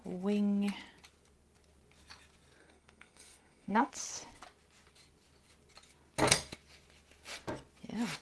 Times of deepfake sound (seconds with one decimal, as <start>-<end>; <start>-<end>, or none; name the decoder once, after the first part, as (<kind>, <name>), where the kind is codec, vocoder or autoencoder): 2.6-3.9 (codec, SNAC)

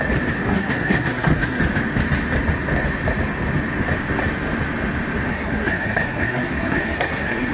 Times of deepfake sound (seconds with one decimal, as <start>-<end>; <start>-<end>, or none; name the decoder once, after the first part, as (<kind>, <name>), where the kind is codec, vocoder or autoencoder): 0.5-1.6 (codec, SNAC); 5.3-7.5

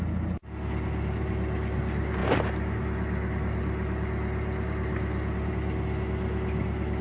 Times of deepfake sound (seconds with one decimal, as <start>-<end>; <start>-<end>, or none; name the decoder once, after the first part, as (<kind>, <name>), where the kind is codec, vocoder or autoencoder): none